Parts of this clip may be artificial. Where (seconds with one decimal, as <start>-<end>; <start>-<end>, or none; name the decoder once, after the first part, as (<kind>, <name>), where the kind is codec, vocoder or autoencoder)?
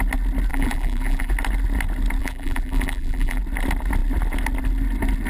0.5-1.3 (vocoder, BigVGAN v2); 2.2-3.4